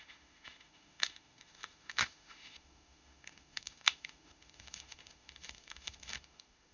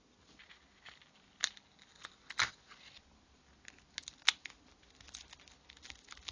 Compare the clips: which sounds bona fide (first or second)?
second